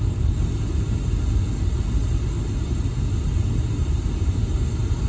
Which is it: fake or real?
real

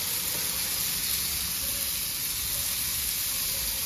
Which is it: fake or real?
real